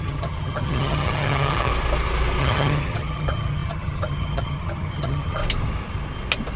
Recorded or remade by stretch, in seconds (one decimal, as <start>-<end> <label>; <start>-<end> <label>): 0.0-1.7 remade; 1.7-2.4 recorded; 2.4-5.4 remade; 5.4-6.6 recorded